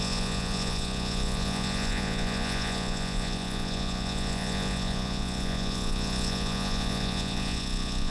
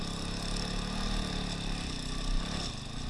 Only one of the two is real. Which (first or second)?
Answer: second